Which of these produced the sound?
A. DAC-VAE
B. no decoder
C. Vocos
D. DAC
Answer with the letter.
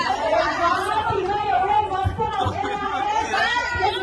C